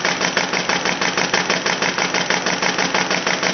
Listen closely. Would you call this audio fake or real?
real